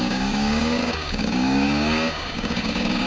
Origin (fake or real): fake